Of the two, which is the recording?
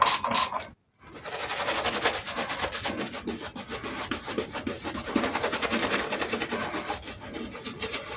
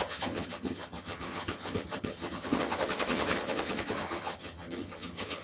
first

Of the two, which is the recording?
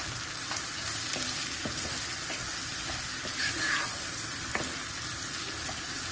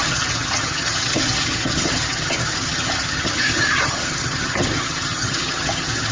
first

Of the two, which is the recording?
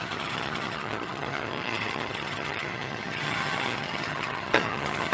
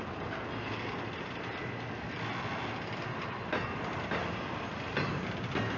second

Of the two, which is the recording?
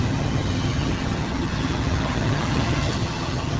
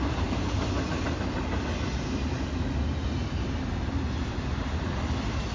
second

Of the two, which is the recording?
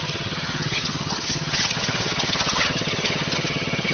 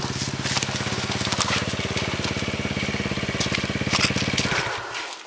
second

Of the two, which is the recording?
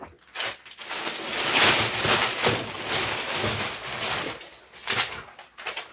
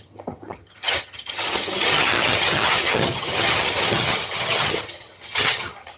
first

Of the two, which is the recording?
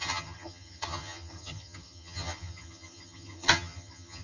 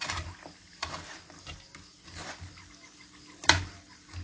second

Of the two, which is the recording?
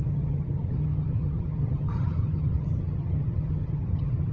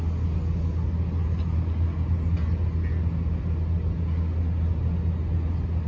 second